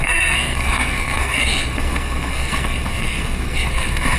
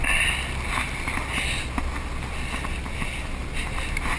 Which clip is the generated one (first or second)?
first